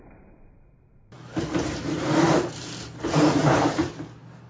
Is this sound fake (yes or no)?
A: yes